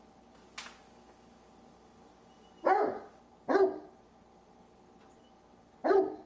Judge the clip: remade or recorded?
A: recorded